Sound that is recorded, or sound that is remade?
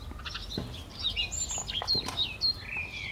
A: recorded